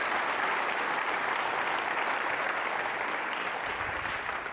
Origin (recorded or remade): recorded